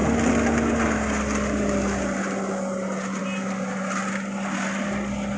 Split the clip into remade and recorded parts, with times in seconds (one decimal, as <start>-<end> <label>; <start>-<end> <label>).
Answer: 0.0-5.4 recorded